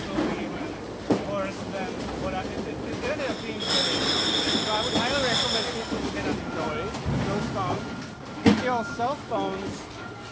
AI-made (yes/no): no